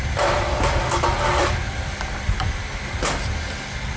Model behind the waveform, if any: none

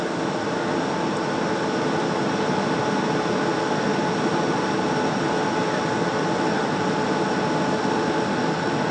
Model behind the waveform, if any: none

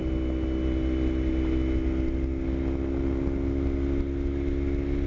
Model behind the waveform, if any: none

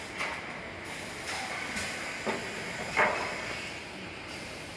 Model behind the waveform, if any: none